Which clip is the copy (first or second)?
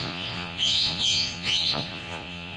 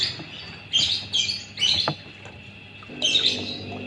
first